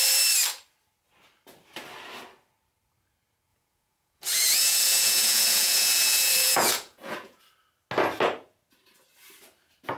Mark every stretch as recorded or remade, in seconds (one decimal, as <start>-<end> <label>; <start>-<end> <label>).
0.0-3.5 recorded; 3.5-7.4 remade; 7.4-10.0 recorded